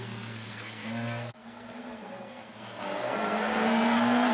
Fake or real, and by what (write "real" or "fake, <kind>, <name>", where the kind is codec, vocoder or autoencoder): fake, codec, SNAC